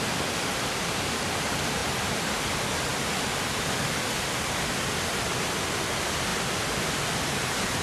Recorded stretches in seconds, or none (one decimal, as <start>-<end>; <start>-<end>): 0.0-7.8